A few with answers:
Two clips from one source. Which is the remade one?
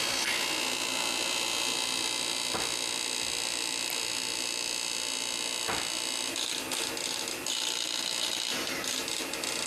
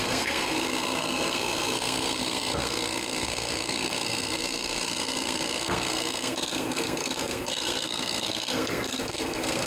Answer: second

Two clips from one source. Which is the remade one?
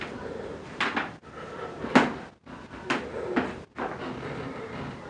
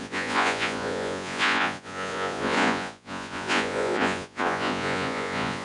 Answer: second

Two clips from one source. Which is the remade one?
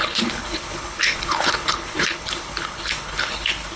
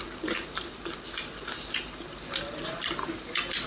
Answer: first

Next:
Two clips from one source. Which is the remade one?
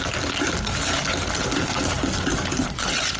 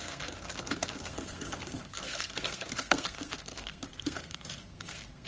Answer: second